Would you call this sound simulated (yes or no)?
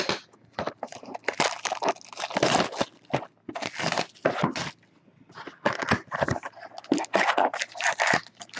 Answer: no